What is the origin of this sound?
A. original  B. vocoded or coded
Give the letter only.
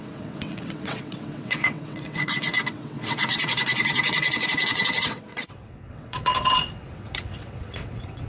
B